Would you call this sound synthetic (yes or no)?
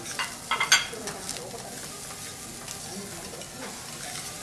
no